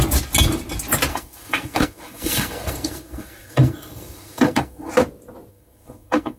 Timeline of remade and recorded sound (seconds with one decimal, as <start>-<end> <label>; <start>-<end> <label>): 0.0-1.1 recorded; 1.1-4.9 remade; 4.9-5.5 recorded; 5.5-6.4 remade